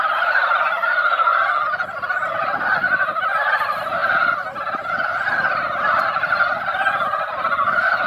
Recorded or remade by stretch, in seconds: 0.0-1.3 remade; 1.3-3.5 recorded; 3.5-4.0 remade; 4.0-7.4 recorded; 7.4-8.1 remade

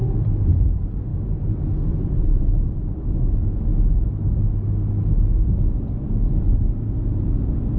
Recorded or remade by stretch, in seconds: 0.0-1.1 remade; 1.1-1.9 recorded; 1.9-3.7 remade; 3.7-6.0 recorded; 6.0-7.8 remade

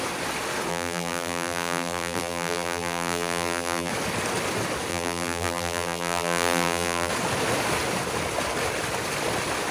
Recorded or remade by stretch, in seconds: 0.0-0.7 recorded; 0.7-3.9 remade; 3.9-4.9 recorded; 4.9-7.1 remade; 7.1-9.7 recorded

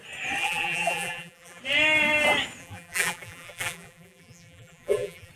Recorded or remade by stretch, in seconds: 0.0-0.4 recorded; 0.4-1.6 remade; 1.6-2.6 recorded; 2.6-5.3 remade

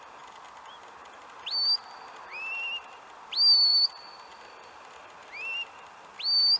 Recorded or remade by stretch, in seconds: 0.0-6.6 recorded